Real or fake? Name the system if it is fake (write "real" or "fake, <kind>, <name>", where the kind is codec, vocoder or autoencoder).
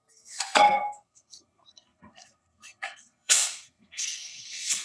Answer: fake, codec, SNAC